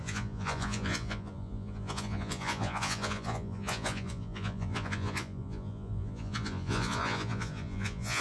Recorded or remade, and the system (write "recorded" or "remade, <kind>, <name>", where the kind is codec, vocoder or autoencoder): remade, vocoder, Vocos